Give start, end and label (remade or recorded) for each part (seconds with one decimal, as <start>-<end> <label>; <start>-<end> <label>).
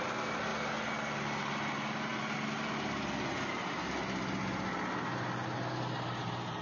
0.0-6.6 recorded